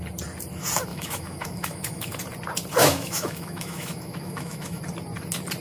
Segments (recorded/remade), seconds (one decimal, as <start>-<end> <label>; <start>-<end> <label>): 0.0-0.9 recorded; 0.9-2.2 remade; 2.2-2.8 recorded; 2.8-4.8 remade; 4.8-5.6 recorded